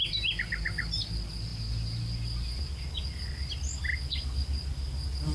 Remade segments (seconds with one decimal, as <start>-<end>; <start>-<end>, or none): none